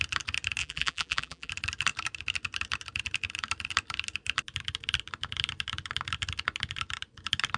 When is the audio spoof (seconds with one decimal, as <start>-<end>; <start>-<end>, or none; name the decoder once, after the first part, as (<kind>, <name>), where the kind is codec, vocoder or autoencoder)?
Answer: 0.6-1.5 (vocoder, BigVGAN v2)